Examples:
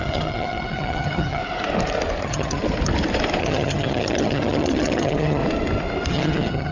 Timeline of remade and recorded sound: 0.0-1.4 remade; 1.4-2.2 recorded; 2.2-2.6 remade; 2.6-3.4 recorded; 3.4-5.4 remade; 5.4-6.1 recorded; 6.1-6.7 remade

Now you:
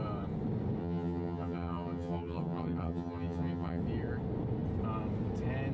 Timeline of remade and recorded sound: 0.0-0.8 recorded; 0.8-3.8 remade; 3.8-5.7 recorded

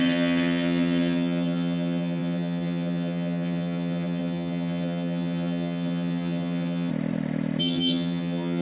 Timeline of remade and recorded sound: 0.0-6.9 remade; 6.9-7.6 recorded; 7.6-8.6 remade

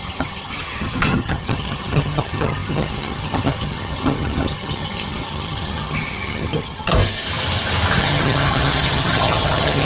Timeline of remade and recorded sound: 0.0-6.9 remade; 6.9-8.0 recorded; 8.0-9.8 remade